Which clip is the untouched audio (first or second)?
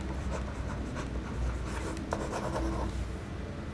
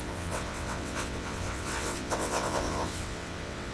first